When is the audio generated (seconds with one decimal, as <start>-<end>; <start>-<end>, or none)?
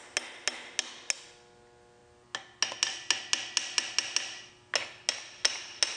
none